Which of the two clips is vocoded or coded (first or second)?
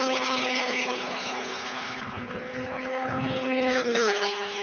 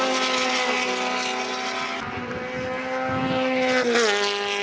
first